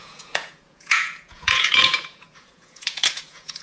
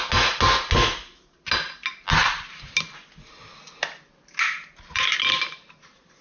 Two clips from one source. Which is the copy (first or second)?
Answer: first